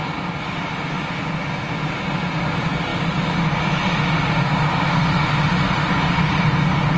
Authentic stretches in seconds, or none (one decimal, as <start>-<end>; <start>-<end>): 0.0-7.0

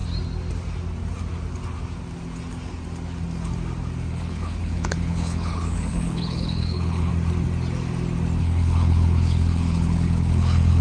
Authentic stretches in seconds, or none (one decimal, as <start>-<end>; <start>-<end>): 0.0-4.1; 7.1-8.4

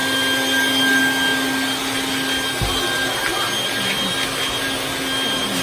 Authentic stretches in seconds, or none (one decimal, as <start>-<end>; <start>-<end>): 0.0-5.6

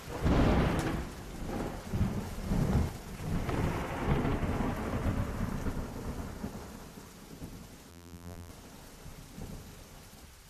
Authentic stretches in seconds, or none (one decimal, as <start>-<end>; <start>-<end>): 0.0-7.9; 8.5-10.5

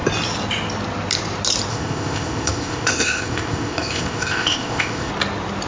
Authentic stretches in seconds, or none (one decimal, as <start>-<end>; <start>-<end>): 0.0-1.7; 5.1-5.7

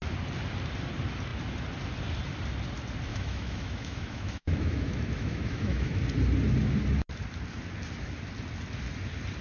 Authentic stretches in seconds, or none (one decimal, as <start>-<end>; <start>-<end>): 0.0-3.1; 6.0-9.4

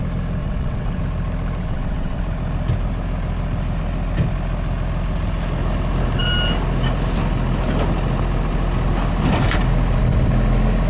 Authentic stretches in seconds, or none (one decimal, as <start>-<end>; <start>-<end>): 0.0-0.4; 1.0-1.6; 2.2-10.9